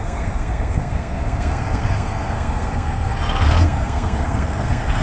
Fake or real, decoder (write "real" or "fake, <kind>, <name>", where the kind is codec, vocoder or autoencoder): fake, codec, SNAC